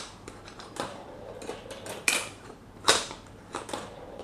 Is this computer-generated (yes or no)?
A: yes